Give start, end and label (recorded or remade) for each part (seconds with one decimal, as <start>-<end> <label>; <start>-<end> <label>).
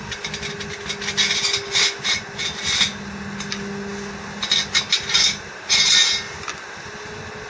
0.0-7.5 recorded